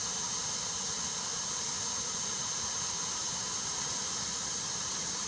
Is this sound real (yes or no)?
yes